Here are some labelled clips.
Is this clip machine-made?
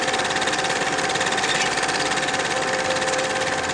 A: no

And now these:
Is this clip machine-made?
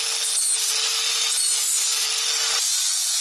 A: no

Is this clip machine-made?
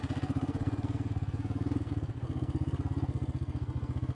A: yes